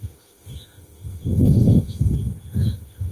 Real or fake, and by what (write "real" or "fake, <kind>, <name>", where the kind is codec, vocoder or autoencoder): fake, autoencoder, DAC-VAE